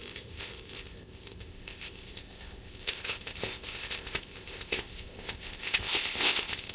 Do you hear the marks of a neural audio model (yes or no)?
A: yes